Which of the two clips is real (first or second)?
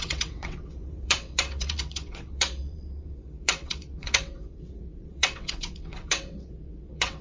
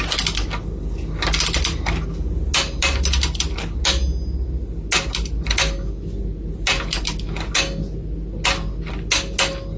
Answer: second